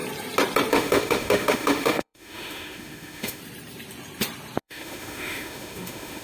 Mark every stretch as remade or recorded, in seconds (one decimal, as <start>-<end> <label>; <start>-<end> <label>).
0.0-0.7 recorded; 0.7-3.4 remade; 3.4-4.6 recorded; 4.6-6.2 remade